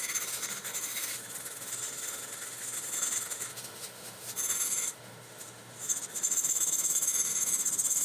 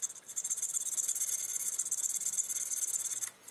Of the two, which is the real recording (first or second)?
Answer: second